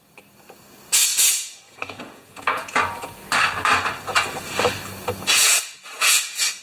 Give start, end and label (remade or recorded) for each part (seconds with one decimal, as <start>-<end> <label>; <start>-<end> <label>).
0.0-1.1 recorded; 1.1-3.1 remade; 3.1-5.3 recorded; 5.3-6.6 remade

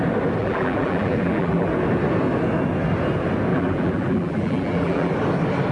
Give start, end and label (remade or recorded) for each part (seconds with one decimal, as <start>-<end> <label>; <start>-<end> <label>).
0.0-0.4 recorded; 0.4-1.7 remade; 1.7-3.5 recorded; 3.5-5.1 remade; 5.1-5.7 recorded

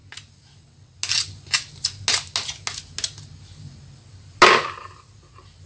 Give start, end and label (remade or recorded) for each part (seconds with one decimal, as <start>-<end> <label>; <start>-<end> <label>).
0.0-5.7 recorded